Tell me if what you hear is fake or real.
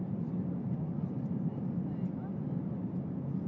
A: real